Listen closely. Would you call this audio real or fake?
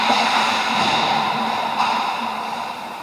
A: fake